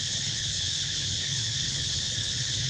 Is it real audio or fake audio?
fake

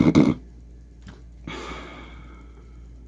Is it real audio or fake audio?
real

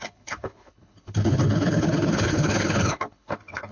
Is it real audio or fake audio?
fake